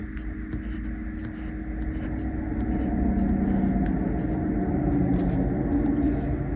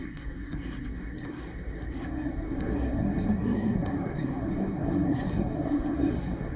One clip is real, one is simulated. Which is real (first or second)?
first